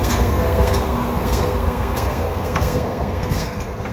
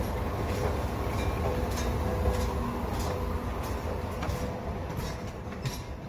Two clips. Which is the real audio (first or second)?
second